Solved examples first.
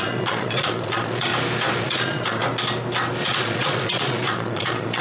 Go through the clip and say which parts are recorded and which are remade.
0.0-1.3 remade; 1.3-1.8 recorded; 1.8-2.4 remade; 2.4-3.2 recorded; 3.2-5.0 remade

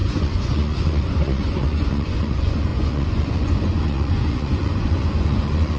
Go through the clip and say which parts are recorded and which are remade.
0.0-5.8 remade